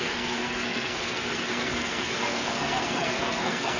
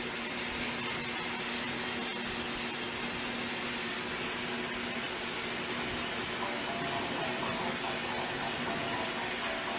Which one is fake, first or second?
first